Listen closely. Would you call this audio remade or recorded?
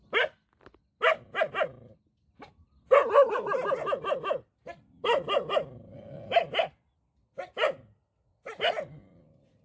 recorded